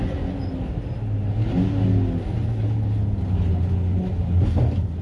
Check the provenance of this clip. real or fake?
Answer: real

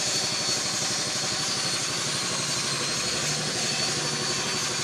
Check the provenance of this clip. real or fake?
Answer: real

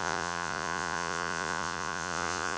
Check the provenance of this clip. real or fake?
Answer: fake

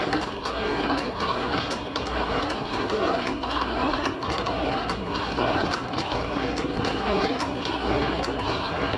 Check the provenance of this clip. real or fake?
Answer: fake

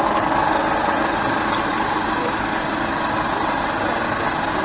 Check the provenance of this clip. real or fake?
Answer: real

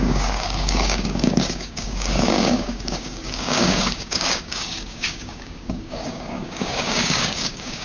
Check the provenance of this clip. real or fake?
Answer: fake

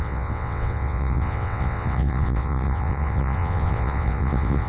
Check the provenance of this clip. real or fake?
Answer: fake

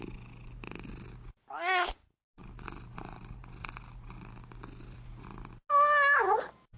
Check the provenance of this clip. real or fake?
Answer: real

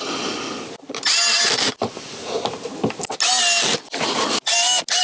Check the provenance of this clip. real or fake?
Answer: real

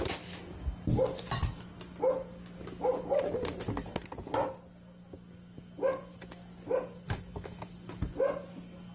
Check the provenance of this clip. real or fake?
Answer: real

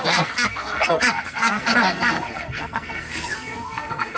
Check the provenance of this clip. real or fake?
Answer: fake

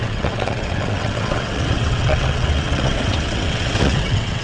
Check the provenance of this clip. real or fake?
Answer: fake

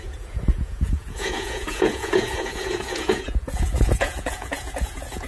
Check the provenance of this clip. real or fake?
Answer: fake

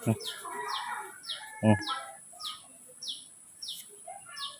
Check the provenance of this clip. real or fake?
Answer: real